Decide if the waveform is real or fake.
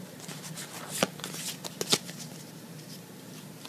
real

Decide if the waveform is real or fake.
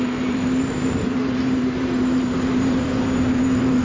fake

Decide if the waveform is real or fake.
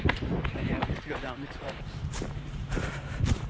fake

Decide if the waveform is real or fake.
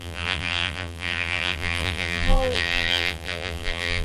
fake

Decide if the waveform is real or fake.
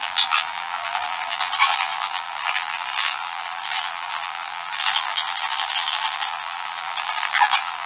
fake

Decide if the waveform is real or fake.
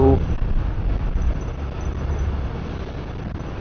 real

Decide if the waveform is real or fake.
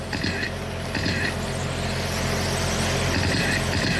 real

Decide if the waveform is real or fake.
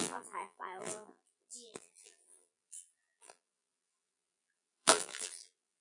fake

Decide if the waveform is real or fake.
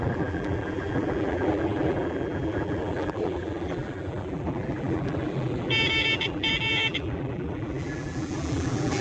fake